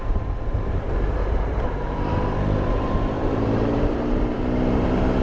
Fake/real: fake